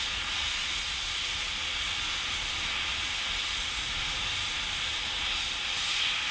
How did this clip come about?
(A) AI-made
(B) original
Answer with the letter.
B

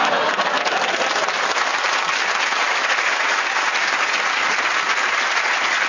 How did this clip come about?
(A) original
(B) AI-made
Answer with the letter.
A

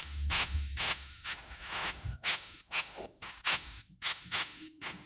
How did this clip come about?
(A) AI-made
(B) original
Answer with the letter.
A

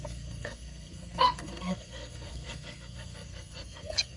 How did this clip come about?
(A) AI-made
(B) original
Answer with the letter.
A